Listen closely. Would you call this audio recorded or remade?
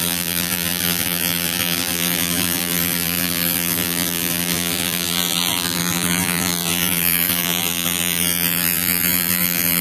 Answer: remade